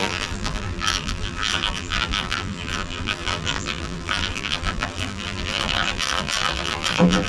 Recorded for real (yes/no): no